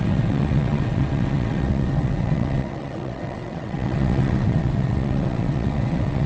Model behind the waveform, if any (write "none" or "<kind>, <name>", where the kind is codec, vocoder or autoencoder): vocoder, WaveNeXt